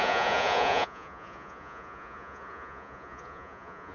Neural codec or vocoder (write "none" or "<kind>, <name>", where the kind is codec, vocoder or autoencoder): vocoder, Vocos